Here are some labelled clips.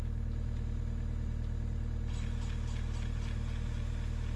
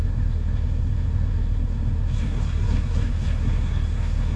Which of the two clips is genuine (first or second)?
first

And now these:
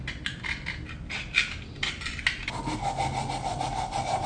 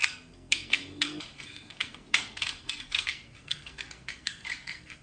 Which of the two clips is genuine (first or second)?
first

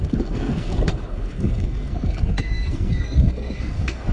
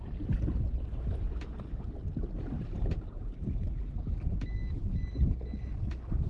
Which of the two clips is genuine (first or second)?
second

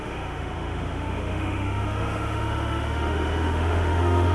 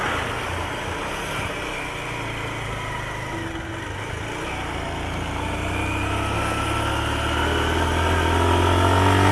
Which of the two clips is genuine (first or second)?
second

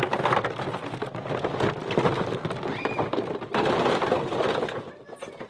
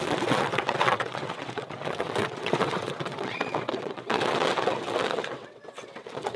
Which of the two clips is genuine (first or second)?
first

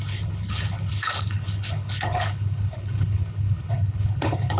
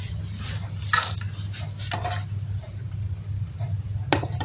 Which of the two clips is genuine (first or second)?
second